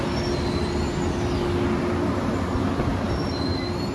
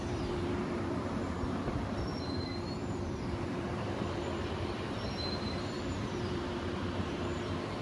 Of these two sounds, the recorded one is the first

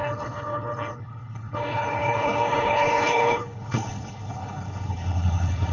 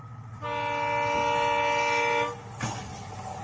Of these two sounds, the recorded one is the second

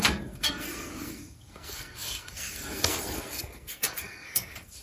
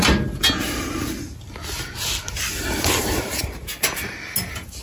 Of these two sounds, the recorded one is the second